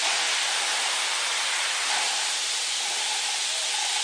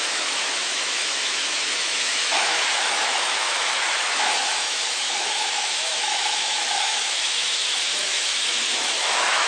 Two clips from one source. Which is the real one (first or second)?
first